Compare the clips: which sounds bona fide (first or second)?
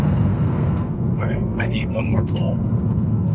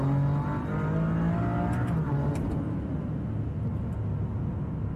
second